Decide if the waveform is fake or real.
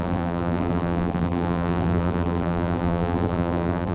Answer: fake